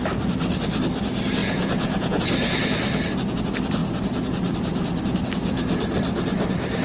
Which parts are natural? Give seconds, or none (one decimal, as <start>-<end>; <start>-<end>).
0.0-1.4; 2.2-6.8